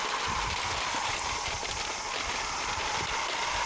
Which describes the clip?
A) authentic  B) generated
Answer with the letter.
B